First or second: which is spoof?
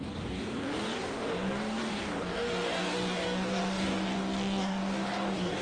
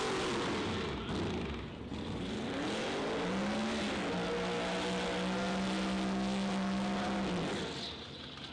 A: first